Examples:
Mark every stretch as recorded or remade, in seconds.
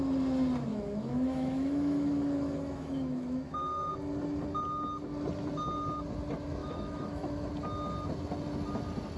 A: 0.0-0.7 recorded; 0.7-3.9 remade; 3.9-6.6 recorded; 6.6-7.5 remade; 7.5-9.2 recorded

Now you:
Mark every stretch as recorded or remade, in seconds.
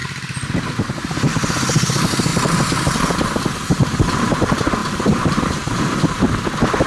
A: 0.0-2.3 remade; 2.3-3.8 recorded; 3.8-6.9 remade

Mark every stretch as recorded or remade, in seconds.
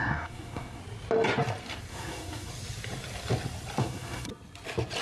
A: 0.0-0.8 remade; 0.8-1.9 recorded; 1.9-2.5 remade; 2.5-3.8 recorded; 3.8-4.3 remade; 4.3-5.0 recorded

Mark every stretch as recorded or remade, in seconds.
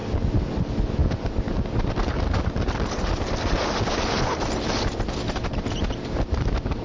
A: 0.0-6.8 recorded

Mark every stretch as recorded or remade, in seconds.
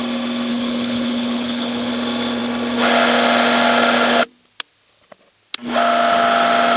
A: 0.0-0.5 recorded; 0.5-1.9 remade; 1.9-6.8 recorded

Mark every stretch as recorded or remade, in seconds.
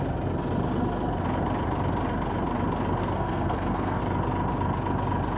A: 0.0-3.0 recorded; 3.0-4.0 remade; 4.0-5.4 recorded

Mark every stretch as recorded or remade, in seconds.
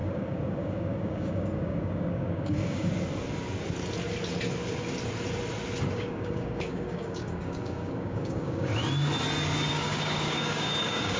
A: 0.0-2.9 remade; 2.9-5.9 recorded; 5.9-8.7 remade; 8.7-9.7 recorded; 9.7-11.2 remade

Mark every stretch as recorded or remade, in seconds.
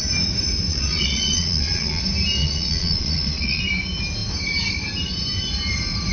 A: 0.0-0.7 recorded; 0.7-2.0 remade; 2.0-2.4 recorded; 2.4-3.6 remade; 3.6-6.1 recorded